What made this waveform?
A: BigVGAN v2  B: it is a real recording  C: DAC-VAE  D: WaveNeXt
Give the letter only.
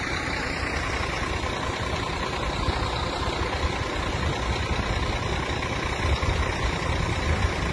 B